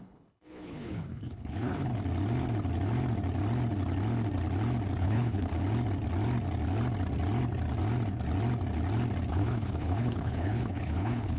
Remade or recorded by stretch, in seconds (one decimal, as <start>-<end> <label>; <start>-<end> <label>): 0.0-1.9 remade; 1.9-5.0 recorded; 5.0-5.5 remade; 5.5-9.3 recorded; 9.3-11.4 remade